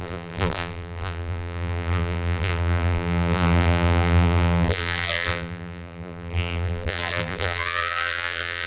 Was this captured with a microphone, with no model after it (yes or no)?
no